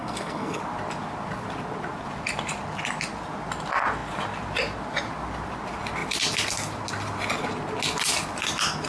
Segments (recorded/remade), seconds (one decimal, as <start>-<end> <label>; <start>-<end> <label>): 0.0-0.6 remade; 0.6-8.9 recorded